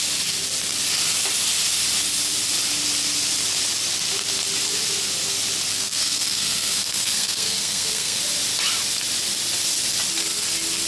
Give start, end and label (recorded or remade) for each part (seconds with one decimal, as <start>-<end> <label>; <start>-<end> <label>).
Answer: 0.0-5.7 recorded; 5.7-8.2 remade; 8.2-10.9 recorded